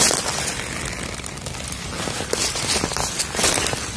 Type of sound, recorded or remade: recorded